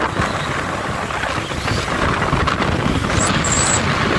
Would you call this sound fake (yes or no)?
no